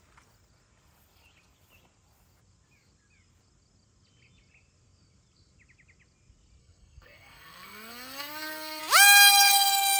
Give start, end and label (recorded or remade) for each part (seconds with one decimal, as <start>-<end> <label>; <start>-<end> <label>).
0.0-6.6 recorded; 6.6-8.8 remade; 8.8-10.0 recorded